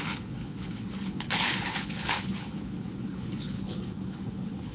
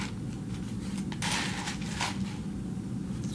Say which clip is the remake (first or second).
first